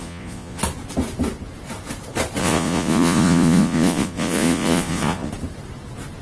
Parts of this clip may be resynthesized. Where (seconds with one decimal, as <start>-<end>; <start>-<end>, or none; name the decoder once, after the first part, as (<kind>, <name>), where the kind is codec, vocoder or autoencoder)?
0.0-0.6 (vocoder, Vocos); 2.4-5.3